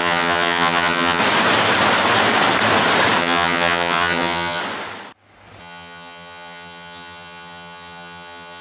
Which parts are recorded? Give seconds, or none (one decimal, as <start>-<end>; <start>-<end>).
1.2-3.2; 4.6-5.6